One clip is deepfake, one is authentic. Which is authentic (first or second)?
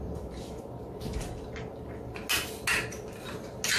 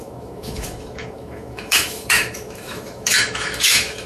first